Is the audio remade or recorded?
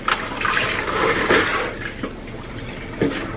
recorded